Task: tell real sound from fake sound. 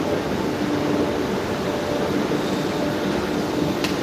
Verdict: real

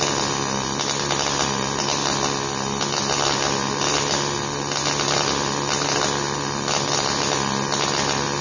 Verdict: real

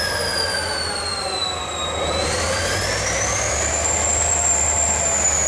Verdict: real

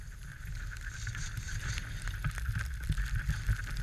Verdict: real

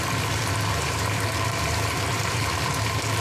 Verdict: fake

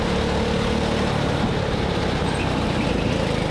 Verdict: real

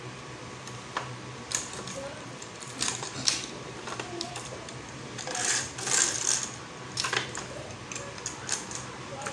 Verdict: fake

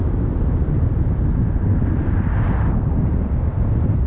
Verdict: fake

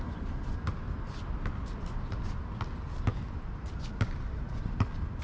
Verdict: real